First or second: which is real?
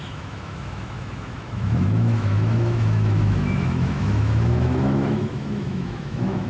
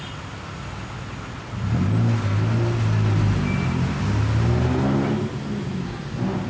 second